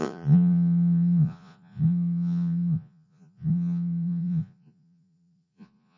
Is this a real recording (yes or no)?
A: no